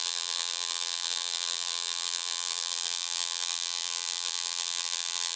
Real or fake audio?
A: fake